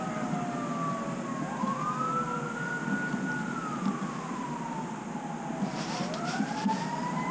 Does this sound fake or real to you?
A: real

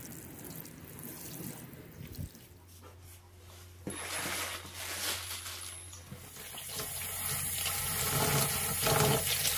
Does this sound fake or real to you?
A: real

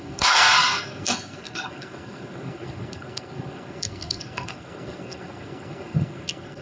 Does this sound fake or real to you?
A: fake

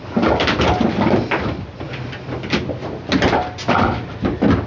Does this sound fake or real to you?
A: real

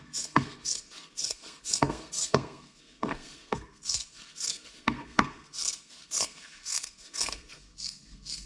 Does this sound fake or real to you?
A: fake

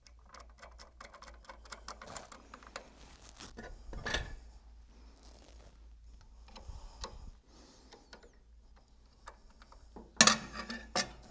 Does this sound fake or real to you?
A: real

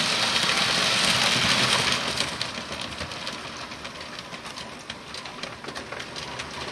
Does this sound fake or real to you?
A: real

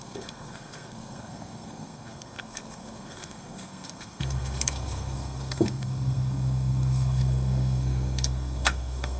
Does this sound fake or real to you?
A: fake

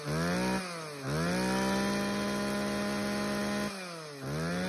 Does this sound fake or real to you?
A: real